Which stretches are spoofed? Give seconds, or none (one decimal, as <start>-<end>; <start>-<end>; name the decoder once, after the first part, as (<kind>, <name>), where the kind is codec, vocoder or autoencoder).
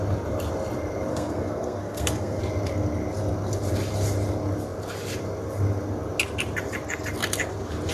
1.1-2.4 (codec, SNAC)